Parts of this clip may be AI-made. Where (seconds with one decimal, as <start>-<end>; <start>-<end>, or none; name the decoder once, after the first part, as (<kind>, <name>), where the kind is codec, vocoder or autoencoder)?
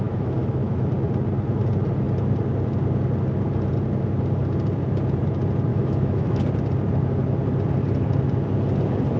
0.0-0.9 (autoencoder, DAC-VAE); 5.7-6.4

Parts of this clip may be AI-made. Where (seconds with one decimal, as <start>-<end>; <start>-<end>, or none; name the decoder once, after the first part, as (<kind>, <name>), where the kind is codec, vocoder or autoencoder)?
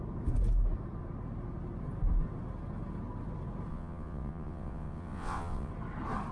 3.7-5.7 (vocoder, WaveNeXt)